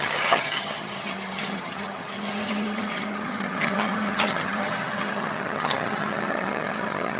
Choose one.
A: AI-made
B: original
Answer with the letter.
A